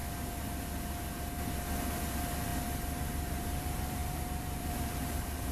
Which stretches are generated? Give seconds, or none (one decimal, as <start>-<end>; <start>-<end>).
2.0-2.5; 3.0-5.5